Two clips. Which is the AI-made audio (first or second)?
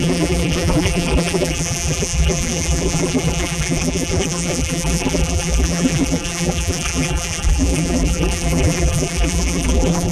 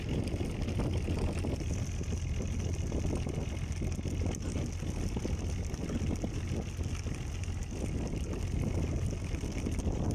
first